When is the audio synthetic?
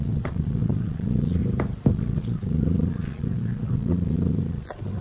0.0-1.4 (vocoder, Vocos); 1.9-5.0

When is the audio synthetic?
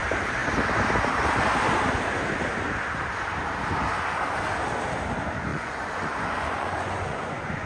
5.5-7.7 (vocoder, Vocos)